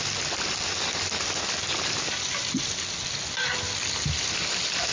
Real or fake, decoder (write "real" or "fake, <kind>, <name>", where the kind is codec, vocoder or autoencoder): real